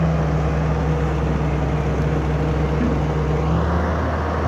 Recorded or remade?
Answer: recorded